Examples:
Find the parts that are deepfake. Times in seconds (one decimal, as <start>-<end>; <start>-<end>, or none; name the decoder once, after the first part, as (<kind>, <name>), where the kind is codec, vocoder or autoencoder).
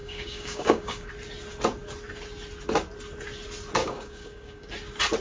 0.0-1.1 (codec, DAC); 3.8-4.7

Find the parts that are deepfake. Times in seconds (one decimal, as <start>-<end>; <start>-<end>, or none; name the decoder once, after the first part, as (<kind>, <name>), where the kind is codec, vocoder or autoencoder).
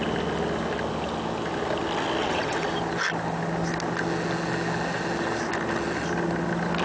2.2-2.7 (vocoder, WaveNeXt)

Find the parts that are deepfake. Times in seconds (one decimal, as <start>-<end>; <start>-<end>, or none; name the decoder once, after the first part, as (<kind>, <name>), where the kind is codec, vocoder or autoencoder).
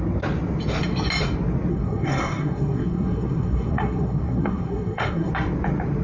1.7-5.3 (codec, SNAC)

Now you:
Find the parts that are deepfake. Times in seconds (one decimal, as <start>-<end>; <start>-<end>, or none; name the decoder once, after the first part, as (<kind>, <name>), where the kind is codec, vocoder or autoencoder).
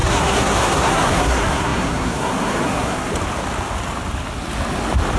0.0-3.1 (codec, SNAC)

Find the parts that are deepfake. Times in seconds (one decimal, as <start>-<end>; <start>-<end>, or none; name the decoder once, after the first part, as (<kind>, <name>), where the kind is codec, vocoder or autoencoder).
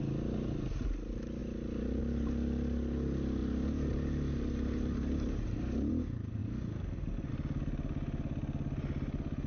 none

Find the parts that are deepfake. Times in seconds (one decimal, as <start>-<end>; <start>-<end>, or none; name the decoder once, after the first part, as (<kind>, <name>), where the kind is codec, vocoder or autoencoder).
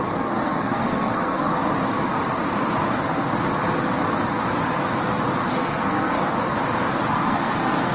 0.0-1.5 (codec, SNAC); 5.5-6.2; 7.1-7.9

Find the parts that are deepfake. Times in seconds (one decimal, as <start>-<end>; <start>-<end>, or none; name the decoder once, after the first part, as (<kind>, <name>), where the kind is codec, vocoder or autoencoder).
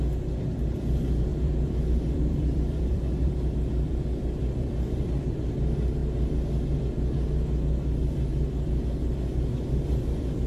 1.3-5.5 (vocoder, BigVGAN v2); 8.3-8.8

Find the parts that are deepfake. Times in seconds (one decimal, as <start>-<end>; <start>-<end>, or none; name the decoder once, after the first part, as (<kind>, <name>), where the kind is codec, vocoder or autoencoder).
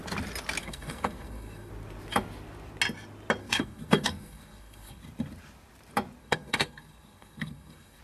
0.6-1.7 (codec, SNAC); 3.4-5.0; 6.2-8.0